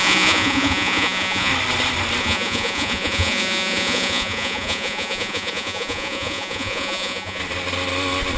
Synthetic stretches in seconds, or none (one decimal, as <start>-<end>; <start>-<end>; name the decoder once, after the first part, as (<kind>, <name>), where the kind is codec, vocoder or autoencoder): 0.0-1.5 (vocoder, Vocos); 2.2-7.4